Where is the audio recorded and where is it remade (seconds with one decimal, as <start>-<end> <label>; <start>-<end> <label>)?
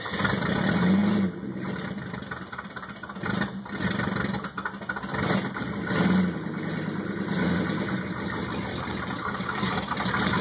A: 0.0-9.2 recorded; 9.2-9.7 remade; 9.7-10.4 recorded